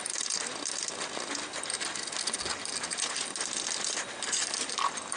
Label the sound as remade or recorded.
recorded